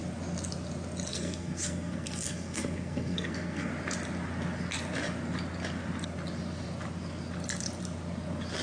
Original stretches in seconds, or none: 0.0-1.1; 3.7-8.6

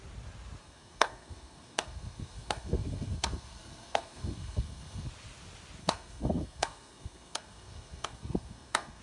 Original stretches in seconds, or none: 0.0-0.6; 5.1-5.8

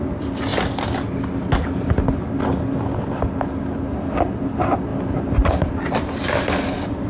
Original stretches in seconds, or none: 0.0-7.1

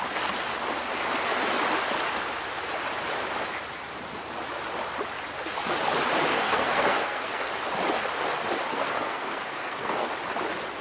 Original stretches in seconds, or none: 0.0-6.3; 7.5-8.7; 10.1-10.8

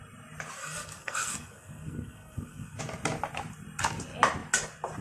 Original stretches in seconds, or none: 0.0-0.6; 2.8-5.0